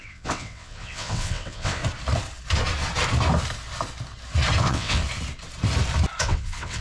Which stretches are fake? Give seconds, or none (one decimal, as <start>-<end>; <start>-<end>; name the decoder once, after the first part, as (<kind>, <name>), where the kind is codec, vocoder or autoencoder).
0.0-1.8 (vocoder, WaveNeXt); 4.6-5.0; 6.2-6.8